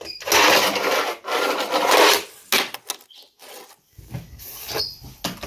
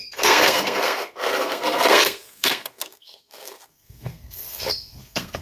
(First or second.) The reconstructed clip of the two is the second